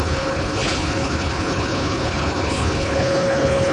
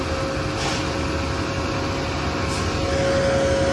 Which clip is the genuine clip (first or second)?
second